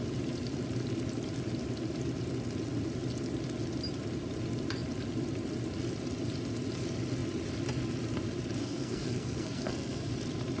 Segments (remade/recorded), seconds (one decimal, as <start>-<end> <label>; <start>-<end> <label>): 0.0-8.6 recorded; 8.6-10.1 remade; 10.1-10.6 recorded